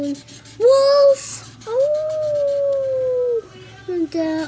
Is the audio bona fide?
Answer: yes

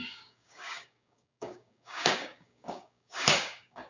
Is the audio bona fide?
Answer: no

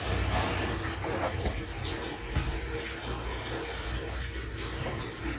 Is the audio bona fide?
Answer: yes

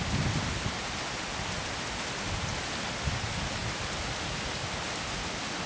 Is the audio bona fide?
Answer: yes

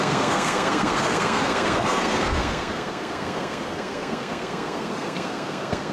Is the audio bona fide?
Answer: no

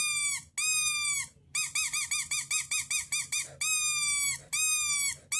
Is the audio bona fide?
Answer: yes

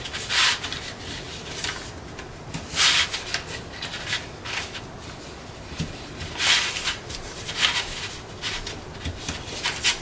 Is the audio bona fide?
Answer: yes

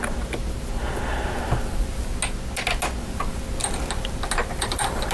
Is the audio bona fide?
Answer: yes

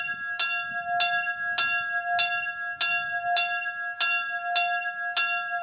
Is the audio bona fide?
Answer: yes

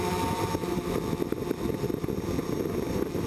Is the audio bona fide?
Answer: yes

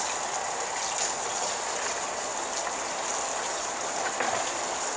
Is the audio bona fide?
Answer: yes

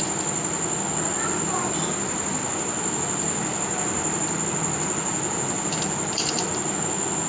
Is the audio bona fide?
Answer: yes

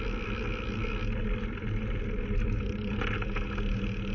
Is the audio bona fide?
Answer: yes